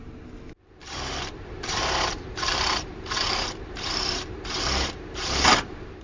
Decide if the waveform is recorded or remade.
remade